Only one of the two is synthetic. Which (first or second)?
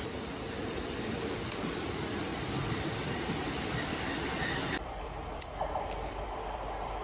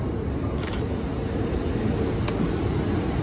first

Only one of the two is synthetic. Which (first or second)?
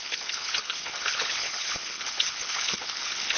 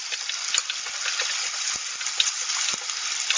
first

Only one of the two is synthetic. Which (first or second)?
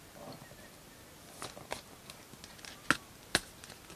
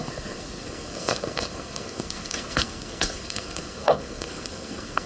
second